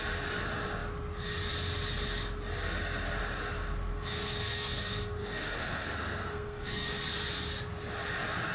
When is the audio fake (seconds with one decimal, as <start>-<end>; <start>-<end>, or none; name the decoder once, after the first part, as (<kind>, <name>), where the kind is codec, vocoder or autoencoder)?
3.9-6.9 (codec, SNAC)